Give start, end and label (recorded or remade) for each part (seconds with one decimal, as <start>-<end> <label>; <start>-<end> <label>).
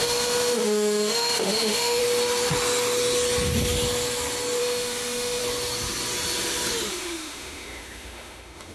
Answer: 0.0-2.0 remade; 2.0-4.6 recorded; 4.6-5.4 remade; 5.4-6.9 recorded; 6.9-8.7 remade